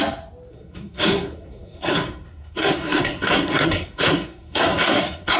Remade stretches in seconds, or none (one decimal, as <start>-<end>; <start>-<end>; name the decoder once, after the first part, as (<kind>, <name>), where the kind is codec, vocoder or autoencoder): 0.5-5.4 (codec, SNAC)